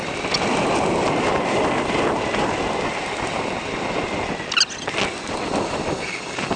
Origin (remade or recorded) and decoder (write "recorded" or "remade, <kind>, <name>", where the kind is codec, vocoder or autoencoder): recorded